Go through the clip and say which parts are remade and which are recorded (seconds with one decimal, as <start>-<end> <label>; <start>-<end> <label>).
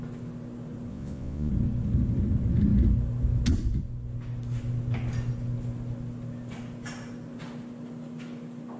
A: 0.0-0.9 recorded; 0.9-1.5 remade; 1.5-8.8 recorded